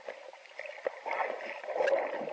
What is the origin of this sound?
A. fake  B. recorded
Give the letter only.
B